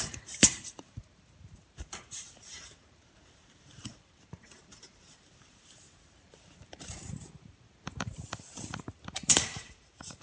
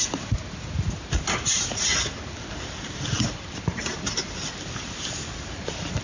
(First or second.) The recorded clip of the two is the second